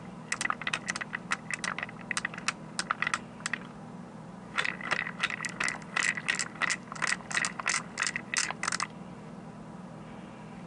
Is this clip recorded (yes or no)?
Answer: yes